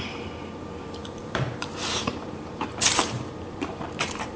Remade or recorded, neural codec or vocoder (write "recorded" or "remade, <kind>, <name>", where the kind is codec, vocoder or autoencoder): remade, vocoder, BigVGAN v2